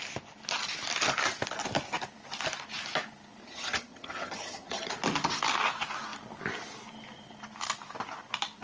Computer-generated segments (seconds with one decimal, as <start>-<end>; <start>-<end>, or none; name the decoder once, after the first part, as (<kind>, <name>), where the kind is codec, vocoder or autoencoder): 3.4-4.9 (vocoder, HiFi-GAN)